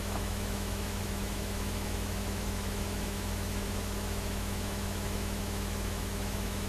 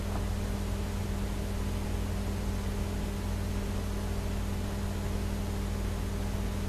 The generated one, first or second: first